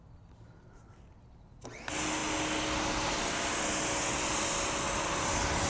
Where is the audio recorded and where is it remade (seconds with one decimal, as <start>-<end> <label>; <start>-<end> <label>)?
0.0-5.7 recorded